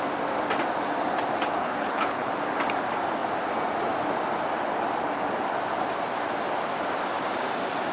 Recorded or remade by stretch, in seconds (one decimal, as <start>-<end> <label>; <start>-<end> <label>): 0.0-1.6 recorded; 1.6-2.3 remade; 2.3-7.9 recorded